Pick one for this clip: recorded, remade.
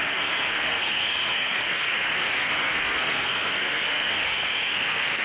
remade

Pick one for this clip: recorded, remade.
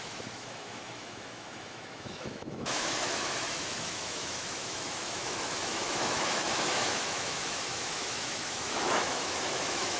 remade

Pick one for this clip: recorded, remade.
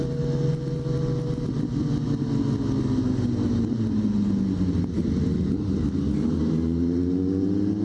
recorded